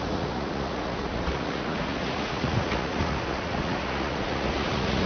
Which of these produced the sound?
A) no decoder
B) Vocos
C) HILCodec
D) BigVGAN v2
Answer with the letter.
B